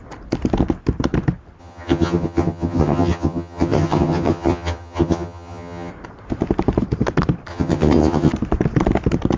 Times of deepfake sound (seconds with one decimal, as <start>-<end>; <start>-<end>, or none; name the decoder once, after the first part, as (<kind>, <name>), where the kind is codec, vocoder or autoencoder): 1.6-5.9 (vocoder, HiFi-GAN); 7.5-8.3